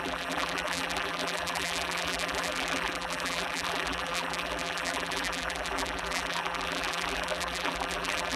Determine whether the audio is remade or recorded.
remade